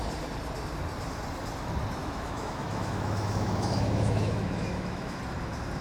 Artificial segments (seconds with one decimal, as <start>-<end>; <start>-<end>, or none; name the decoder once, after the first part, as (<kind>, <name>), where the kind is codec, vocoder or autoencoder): 2.0-5.2 (autoencoder, DAC-VAE)